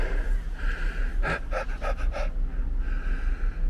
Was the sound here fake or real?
real